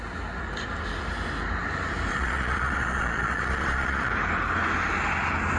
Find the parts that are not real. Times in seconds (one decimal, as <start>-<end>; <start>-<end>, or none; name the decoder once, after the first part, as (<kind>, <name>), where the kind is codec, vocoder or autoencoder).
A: 2.1-4.1 (vocoder, Vocos)

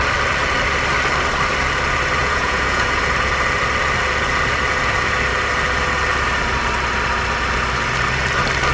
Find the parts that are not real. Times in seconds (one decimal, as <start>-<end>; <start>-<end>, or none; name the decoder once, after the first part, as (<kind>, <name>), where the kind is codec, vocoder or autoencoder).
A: 2.2-3.0 (vocoder, Vocos)

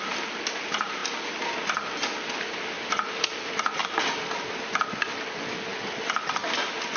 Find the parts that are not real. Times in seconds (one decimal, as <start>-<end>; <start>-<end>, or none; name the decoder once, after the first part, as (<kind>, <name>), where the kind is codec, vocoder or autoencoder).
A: none

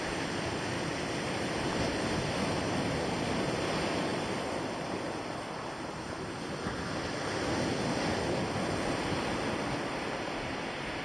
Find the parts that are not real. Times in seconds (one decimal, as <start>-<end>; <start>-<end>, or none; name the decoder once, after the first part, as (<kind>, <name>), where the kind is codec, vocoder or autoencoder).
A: none